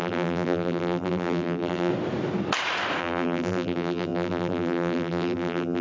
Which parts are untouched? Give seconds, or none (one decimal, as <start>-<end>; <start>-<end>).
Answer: 1.9-3.0